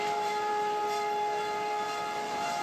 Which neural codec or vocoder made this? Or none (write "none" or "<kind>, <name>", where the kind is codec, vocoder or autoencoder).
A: vocoder, BigVGAN v2